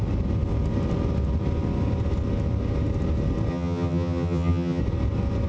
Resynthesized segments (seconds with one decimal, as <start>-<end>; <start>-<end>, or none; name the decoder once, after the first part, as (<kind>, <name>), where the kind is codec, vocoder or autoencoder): 3.5-4.8 (vocoder, HiFi-GAN)